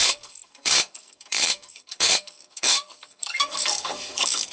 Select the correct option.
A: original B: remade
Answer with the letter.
B